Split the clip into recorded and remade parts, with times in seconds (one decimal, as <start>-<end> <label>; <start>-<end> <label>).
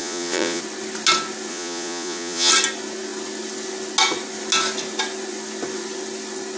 0.0-0.6 remade; 0.6-1.5 recorded; 1.5-2.5 remade; 2.5-6.6 recorded